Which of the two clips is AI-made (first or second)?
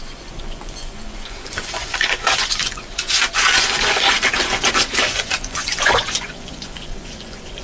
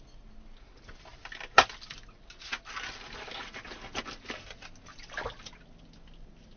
first